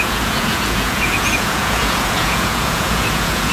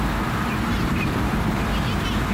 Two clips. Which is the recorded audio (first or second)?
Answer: second